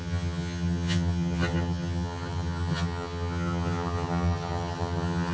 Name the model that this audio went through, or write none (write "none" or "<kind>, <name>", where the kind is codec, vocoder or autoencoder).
vocoder, HiFi-GAN